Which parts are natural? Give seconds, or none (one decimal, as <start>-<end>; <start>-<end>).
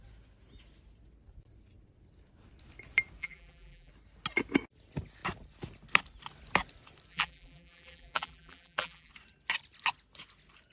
0.0-3.2; 3.9-7.1; 9.1-10.7